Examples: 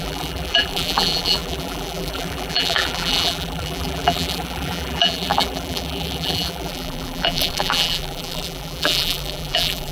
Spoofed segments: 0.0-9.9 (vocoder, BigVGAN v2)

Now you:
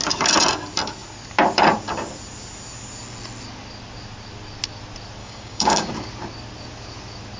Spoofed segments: 5.2-5.9 (codec, DAC)

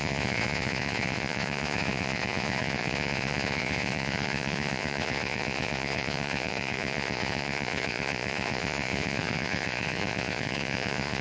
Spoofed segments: 0.0-11.2 (vocoder, Vocos)

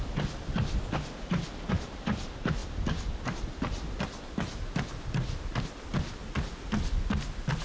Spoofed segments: none